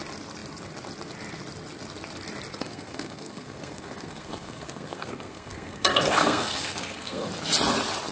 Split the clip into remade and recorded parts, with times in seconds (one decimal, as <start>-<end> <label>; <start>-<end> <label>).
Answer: 0.0-2.5 recorded; 2.5-7.3 remade; 7.3-8.1 recorded